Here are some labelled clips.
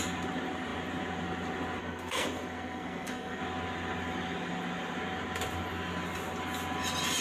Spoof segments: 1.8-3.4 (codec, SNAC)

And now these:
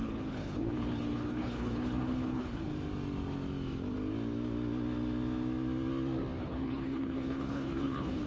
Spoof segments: 0.0-2.7 (codec, HILCodec); 6.4-8.3